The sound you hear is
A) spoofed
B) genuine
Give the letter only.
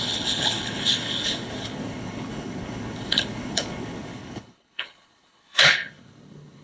A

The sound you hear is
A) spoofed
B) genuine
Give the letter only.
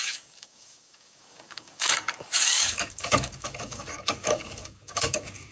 A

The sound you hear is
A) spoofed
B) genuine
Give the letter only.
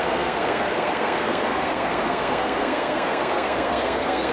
A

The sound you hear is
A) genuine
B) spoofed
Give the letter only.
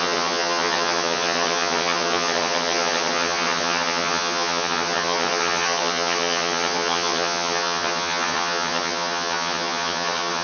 B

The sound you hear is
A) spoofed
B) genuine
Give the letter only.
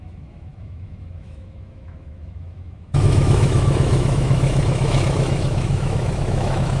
A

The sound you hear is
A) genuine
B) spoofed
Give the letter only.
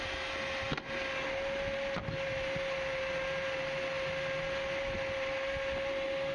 A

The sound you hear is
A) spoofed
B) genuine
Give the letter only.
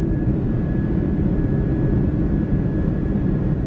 A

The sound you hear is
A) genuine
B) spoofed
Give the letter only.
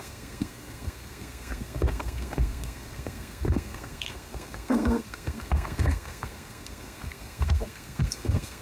B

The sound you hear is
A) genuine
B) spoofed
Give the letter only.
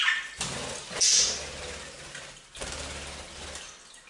A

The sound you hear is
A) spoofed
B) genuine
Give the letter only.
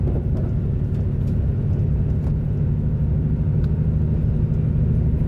B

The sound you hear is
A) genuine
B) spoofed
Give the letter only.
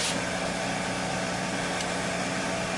A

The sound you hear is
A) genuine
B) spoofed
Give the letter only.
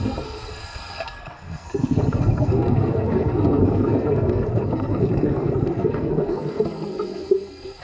B